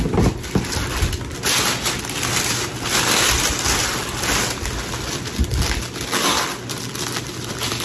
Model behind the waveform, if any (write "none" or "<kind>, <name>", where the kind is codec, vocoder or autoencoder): none